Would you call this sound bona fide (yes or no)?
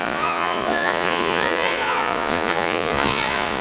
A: no